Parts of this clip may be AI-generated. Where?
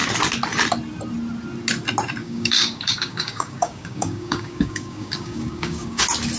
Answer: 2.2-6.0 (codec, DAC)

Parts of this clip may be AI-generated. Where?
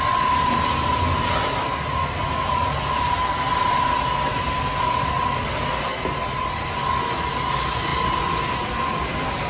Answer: none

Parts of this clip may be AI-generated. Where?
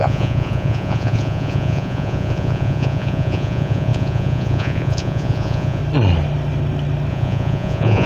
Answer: 0.0-5.8 (vocoder, Vocos); 7.1-8.1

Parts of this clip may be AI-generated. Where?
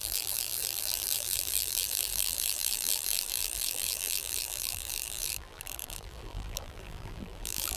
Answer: 0.0-7.8 (vocoder, BigVGAN v2)